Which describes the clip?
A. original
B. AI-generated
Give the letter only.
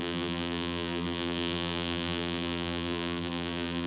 B